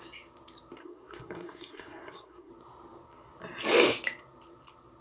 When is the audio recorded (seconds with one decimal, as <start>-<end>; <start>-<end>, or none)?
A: 0.0-0.8; 2.5-5.0